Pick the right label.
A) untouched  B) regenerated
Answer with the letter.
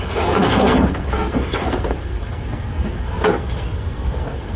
B